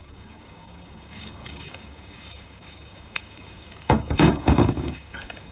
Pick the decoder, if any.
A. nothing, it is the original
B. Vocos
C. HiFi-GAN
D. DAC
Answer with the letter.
D